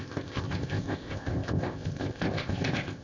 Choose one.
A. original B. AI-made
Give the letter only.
B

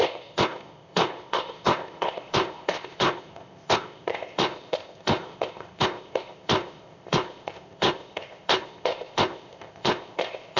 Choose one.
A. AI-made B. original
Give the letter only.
A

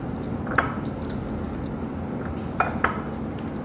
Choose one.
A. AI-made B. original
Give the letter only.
B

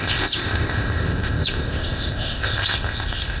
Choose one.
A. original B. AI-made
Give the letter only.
B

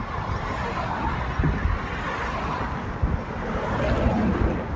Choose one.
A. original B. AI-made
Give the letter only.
A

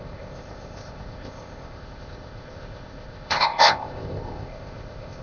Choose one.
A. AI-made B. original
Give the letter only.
A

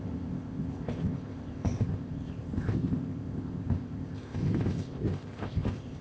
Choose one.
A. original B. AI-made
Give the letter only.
B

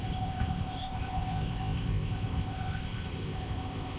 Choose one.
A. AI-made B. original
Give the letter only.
A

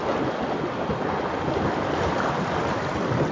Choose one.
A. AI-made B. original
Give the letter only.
B